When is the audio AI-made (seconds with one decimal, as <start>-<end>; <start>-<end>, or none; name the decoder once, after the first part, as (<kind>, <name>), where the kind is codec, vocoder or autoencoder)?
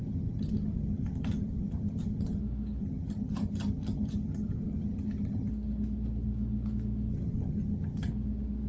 0.0-2.4 (vocoder, HiFi-GAN); 2.8-5.5; 7.1-8.1